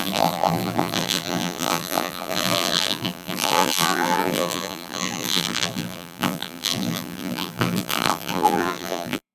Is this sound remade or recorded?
remade